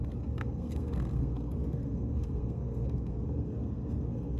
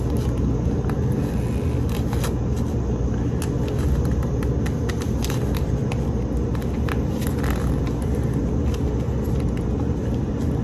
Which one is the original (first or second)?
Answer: second